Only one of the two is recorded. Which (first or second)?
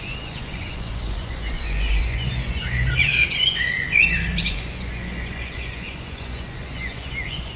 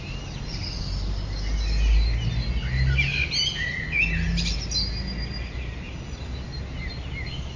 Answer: second